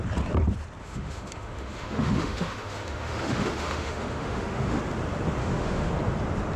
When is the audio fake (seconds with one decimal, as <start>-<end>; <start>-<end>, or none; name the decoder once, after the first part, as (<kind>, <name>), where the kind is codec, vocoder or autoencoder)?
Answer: 0.8-4.8 (autoencoder, DAC-VAE); 5.4-5.9